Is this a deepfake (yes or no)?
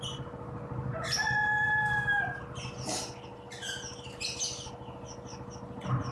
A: no